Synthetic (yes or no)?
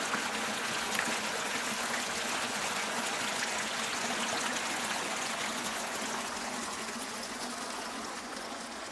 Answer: yes